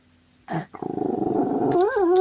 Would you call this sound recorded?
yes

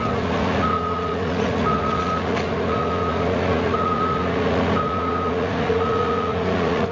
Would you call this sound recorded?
no